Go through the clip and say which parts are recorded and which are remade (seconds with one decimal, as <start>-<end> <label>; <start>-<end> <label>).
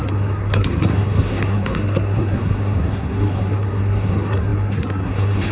0.0-5.5 remade